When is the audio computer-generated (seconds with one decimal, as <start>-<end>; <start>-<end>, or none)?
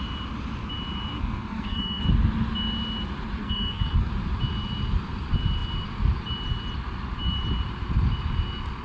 1.2-2.0; 3.4-4.1